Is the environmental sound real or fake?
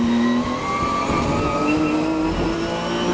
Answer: real